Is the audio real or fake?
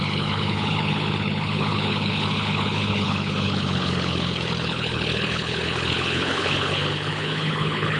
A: fake